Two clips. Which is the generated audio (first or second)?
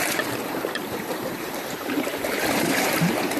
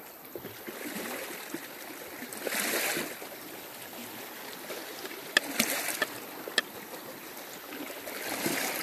first